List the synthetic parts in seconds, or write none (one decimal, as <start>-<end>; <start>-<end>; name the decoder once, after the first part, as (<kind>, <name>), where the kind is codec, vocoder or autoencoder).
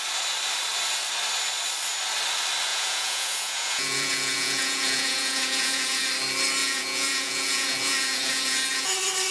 2.7-6.1 (vocoder, Vocos); 6.6-8.9